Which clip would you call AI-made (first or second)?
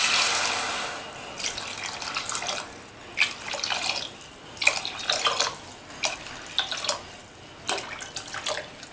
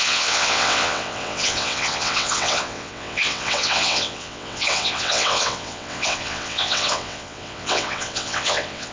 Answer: second